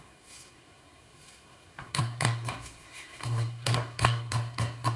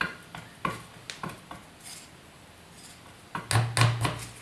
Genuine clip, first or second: second